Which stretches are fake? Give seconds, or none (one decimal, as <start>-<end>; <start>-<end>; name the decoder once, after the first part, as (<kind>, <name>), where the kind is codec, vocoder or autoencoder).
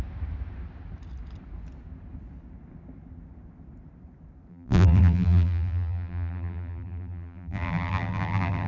4.5-8.7 (vocoder, BigVGAN v2)